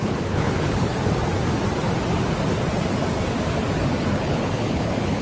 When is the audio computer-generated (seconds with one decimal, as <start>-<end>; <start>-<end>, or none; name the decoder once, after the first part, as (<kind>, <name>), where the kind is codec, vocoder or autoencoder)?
0.0-0.9 (codec, HILCodec); 4.0-5.2